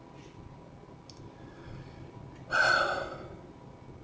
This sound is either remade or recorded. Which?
recorded